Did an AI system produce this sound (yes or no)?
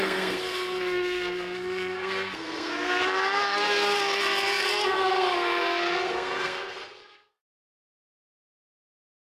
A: yes